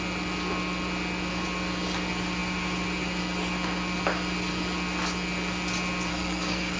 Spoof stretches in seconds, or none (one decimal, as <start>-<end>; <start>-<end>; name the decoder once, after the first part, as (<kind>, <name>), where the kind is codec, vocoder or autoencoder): 6.1-6.8 (codec, SNAC)